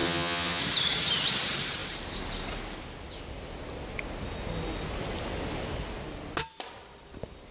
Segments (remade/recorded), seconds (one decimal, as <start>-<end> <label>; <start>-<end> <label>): 0.0-0.6 remade; 0.6-7.5 recorded